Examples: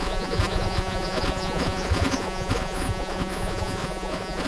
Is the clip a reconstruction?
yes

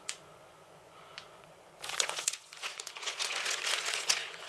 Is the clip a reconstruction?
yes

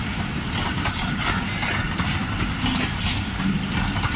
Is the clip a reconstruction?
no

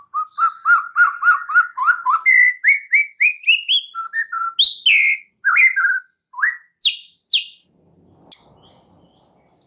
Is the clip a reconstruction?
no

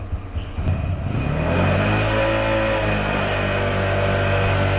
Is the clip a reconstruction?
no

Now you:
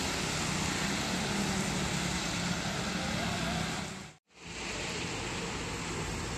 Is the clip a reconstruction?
no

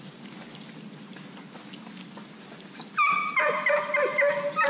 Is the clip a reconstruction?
no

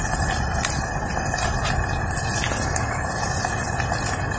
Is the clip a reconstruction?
no